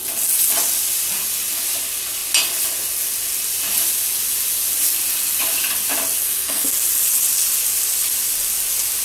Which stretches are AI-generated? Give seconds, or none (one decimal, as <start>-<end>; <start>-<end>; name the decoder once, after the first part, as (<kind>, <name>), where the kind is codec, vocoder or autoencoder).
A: 6.2-6.7 (codec, SNAC)